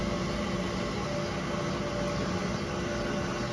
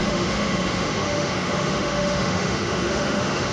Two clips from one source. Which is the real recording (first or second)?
first